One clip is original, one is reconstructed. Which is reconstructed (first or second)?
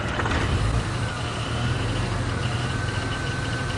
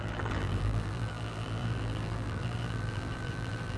second